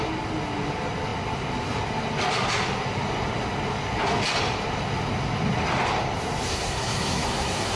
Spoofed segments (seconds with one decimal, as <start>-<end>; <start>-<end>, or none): 6.5-7.8